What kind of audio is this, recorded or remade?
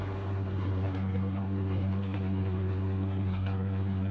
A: remade